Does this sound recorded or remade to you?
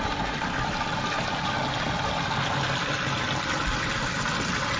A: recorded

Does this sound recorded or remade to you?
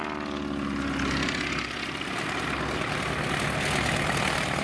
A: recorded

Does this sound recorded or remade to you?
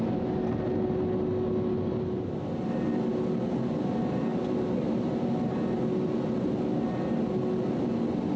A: recorded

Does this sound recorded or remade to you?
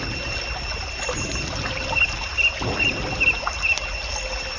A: recorded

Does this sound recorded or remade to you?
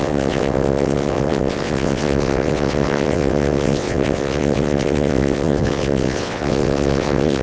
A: remade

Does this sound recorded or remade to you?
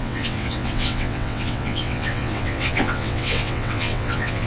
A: remade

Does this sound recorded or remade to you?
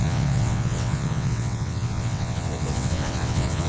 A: remade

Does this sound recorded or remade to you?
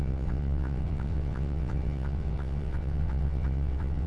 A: remade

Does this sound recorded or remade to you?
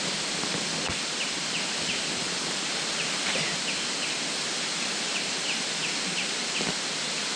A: recorded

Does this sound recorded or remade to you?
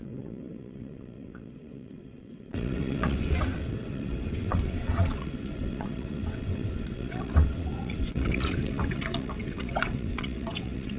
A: remade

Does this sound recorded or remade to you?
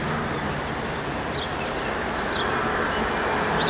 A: recorded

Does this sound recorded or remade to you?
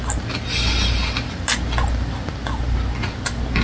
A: recorded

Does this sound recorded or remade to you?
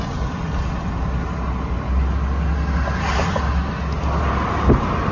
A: recorded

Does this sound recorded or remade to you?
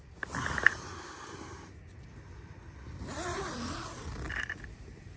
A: recorded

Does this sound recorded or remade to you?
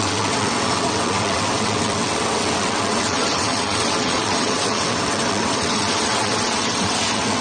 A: remade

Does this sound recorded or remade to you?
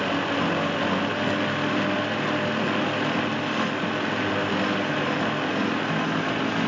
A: recorded